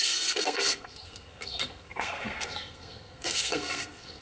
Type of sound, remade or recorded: remade